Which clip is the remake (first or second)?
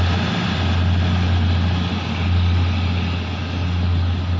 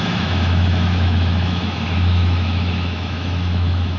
second